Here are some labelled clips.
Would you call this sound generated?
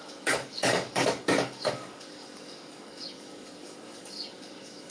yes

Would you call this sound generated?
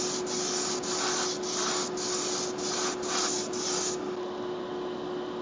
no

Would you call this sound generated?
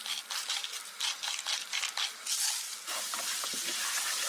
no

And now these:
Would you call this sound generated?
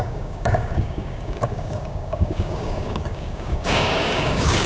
yes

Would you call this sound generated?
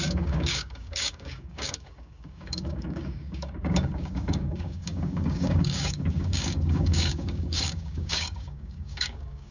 yes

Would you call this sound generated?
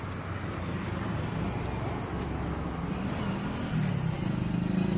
no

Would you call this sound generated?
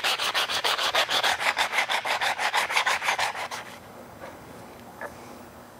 yes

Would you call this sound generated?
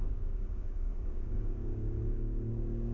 yes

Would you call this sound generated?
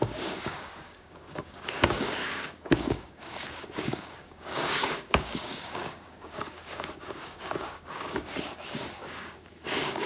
yes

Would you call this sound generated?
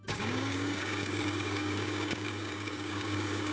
yes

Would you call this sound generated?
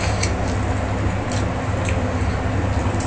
no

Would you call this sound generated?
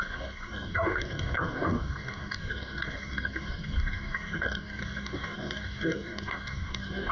yes